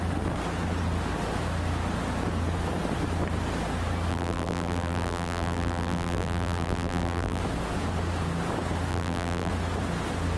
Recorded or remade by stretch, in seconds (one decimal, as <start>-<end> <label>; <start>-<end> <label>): 0.0-4.1 recorded; 4.1-7.4 remade; 7.4-8.9 recorded; 8.9-9.5 remade; 9.5-10.4 recorded